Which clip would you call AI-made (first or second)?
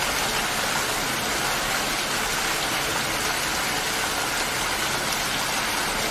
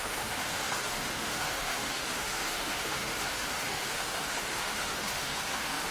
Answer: second